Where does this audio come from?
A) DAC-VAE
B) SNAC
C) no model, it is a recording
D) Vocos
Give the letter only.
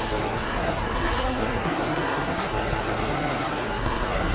B